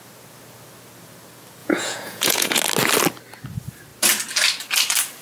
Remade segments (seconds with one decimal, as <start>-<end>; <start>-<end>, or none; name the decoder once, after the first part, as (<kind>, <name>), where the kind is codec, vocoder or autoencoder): 1.6-2.6 (vocoder, Vocos)